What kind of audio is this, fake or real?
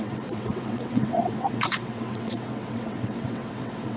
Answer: fake